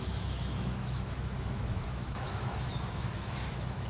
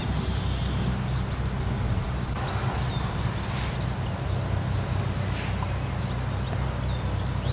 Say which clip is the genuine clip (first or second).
second